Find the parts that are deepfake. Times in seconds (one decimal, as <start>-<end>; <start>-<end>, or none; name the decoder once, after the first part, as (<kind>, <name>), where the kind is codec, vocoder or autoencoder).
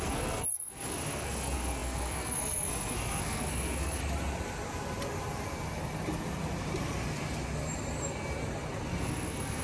0.0-4.0 (codec, SNAC); 9.0-9.6